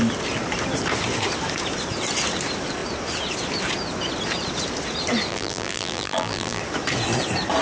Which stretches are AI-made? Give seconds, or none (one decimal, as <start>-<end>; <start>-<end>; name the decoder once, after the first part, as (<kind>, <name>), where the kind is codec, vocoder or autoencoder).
5.3-6.6 (vocoder, BigVGAN v2)